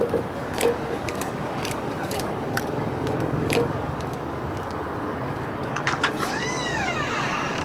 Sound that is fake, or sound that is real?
fake